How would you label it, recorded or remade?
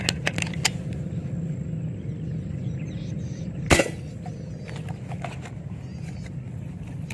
recorded